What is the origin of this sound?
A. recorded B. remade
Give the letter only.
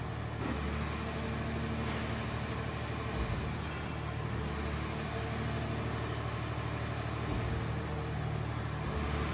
A